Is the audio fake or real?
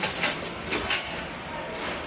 fake